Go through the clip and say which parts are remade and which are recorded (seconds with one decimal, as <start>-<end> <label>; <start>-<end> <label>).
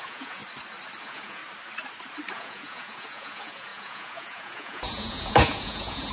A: 0.0-0.4 remade; 0.4-1.0 recorded; 1.0-1.4 remade; 1.4-2.3 recorded; 2.3-6.1 remade